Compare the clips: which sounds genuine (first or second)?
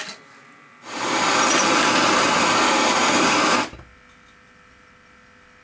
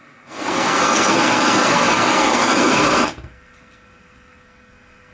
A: first